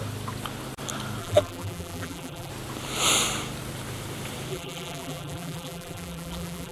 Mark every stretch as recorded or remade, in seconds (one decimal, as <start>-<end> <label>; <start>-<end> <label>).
0.0-1.2 recorded; 1.2-2.5 remade; 2.5-4.5 recorded; 4.5-6.7 remade